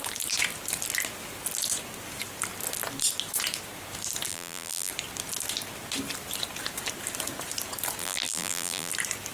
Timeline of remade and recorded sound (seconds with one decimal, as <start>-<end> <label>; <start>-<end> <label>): 0.0-4.3 recorded; 4.3-4.9 remade; 4.9-8.0 recorded; 8.0-8.9 remade; 8.9-9.3 recorded